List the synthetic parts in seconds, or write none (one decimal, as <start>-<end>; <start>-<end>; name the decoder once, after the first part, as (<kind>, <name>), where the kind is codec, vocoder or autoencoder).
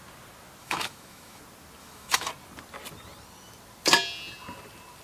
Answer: 0.6-1.4 (autoencoder, DAC-VAE); 1.8-2.3